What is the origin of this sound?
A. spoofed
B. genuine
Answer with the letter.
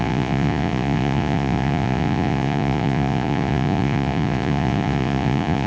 A